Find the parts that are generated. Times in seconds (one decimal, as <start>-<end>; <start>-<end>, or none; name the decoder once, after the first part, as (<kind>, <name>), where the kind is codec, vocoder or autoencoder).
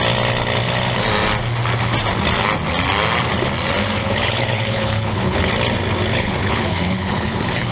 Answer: 4.0-5.5 (codec, HILCodec); 6.1-7.7